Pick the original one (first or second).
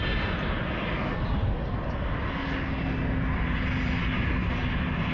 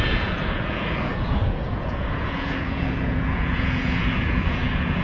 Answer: first